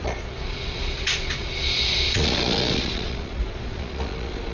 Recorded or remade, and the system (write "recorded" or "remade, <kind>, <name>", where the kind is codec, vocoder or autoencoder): remade, vocoder, Vocos